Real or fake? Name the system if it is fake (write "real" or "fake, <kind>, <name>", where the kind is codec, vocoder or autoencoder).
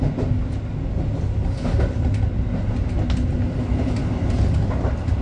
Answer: real